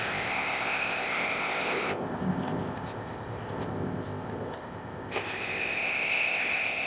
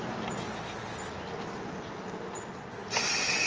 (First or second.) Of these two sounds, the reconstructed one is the first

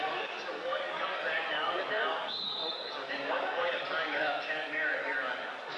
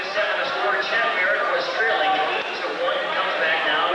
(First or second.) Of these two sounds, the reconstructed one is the first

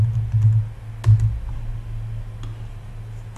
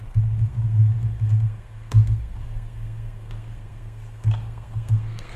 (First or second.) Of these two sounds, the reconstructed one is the second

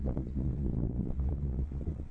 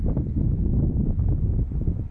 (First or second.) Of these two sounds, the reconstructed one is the first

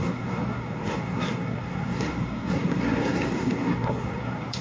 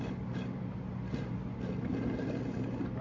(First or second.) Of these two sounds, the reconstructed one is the first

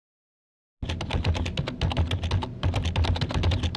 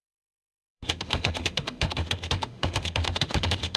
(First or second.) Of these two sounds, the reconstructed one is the second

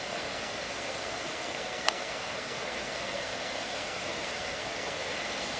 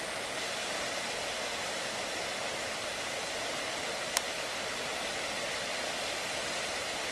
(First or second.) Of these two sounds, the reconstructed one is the first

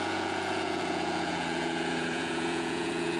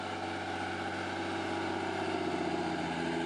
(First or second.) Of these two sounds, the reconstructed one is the first